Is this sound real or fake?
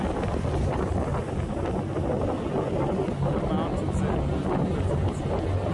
real